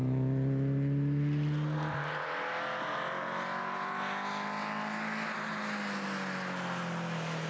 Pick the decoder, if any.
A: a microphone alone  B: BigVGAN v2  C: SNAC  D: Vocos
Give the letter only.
A